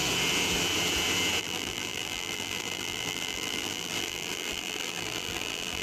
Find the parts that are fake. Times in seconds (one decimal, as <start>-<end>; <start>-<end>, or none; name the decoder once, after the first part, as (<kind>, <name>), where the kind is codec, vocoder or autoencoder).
1.4-5.8 (vocoder, BigVGAN v2)